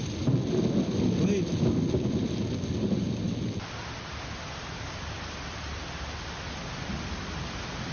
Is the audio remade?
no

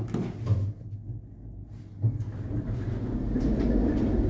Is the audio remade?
no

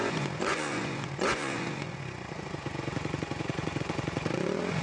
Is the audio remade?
yes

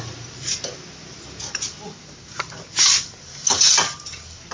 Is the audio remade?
no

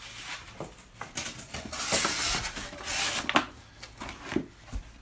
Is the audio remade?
no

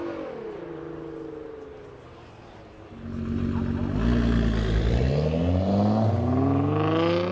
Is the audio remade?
no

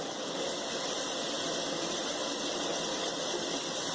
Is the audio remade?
no